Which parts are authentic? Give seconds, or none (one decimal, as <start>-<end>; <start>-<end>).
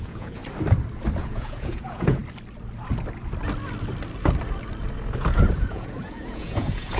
0.4-1.2; 2.2-5.1